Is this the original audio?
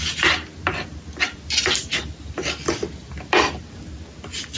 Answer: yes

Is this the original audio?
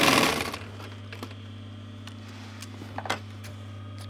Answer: yes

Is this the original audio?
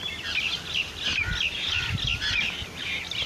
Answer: yes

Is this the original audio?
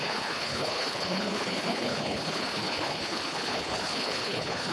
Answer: no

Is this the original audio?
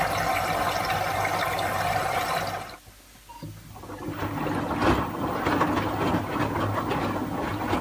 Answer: yes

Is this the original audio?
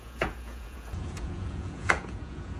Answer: no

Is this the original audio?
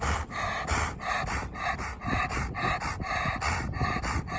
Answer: yes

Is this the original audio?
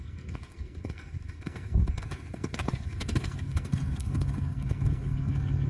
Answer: no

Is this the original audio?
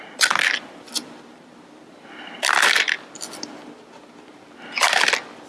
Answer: yes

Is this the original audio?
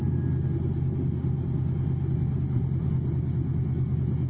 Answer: yes